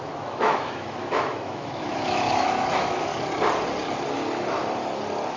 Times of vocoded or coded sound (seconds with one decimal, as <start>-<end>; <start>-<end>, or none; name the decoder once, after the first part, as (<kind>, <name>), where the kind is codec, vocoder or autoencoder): 0.0-3.1 (autoencoder, DAC-VAE)